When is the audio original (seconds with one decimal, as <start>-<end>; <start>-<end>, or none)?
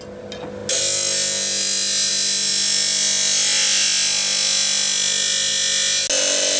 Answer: 0.0-6.6